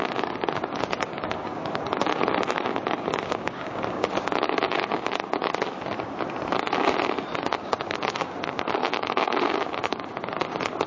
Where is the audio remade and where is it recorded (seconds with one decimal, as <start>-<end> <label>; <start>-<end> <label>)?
0.0-5.5 remade; 5.5-7.4 recorded; 7.4-10.9 remade